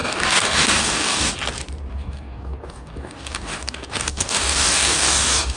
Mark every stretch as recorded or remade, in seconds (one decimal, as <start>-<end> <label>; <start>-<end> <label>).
0.0-1.3 remade; 1.3-1.9 recorded; 1.9-5.6 remade